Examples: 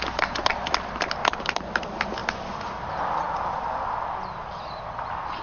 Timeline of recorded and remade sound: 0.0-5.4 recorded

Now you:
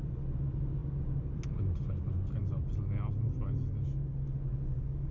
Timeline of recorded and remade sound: 0.0-5.1 recorded

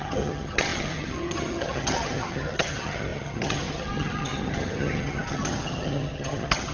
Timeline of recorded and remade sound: 0.0-6.7 remade

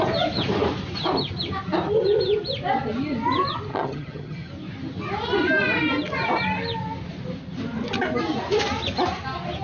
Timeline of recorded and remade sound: 0.0-3.7 recorded; 3.7-4.5 remade; 4.5-9.6 recorded

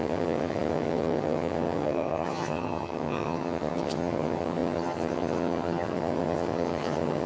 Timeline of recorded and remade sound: 0.0-7.3 remade

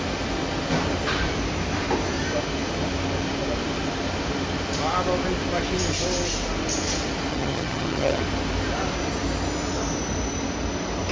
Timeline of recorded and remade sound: 0.0-7.3 recorded; 7.3-8.2 remade; 8.2-11.1 recorded

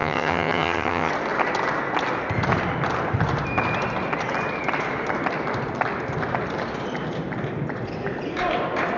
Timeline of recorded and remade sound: 0.0-1.1 remade; 1.1-9.0 recorded